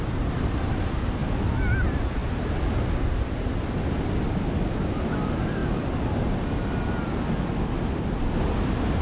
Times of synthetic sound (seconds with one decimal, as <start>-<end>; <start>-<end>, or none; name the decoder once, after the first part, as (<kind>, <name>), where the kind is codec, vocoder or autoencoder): none